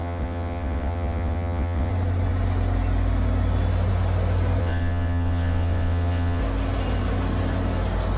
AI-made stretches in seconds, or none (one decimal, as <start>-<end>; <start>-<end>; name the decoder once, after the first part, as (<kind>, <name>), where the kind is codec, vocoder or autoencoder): 0.0-1.9 (vocoder, WaveNeXt); 4.6-6.4